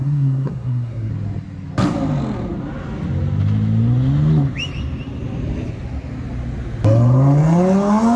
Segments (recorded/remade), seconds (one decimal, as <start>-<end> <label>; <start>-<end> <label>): 0.0-1.1 remade; 1.1-8.2 recorded